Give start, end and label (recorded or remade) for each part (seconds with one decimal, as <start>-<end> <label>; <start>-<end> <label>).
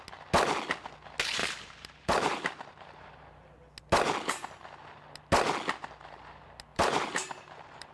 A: 0.0-1.4 recorded; 1.4-3.6 remade; 3.6-6.7 recorded; 6.7-7.9 remade